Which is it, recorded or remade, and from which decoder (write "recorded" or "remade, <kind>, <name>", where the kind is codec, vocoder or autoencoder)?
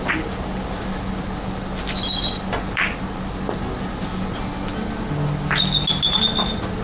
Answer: recorded